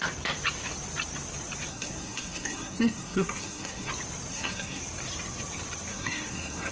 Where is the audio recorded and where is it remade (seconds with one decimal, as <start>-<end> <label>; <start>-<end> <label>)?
0.0-1.7 recorded; 1.7-3.9 remade; 3.9-4.3 recorded; 4.3-4.8 remade; 4.8-5.9 recorded; 5.9-6.7 remade